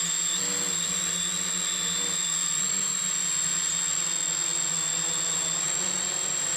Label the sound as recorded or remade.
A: recorded